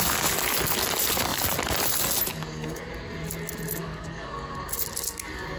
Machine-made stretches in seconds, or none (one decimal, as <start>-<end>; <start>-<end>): 2.3-2.9; 3.8-4.5